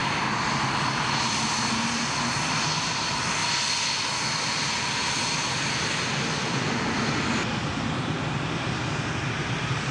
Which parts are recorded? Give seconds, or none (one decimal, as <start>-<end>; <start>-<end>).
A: 0.0-9.9